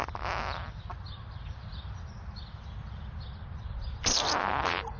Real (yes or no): yes